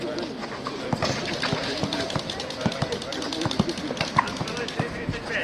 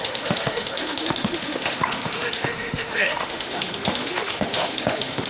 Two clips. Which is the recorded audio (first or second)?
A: first